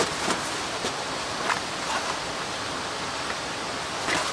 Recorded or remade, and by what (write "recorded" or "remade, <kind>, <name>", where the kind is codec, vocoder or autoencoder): recorded